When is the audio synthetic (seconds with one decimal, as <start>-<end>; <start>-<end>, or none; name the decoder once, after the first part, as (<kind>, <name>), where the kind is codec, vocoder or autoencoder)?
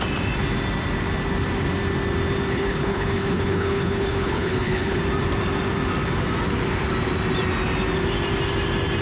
2.5-5.0 (codec, HILCodec)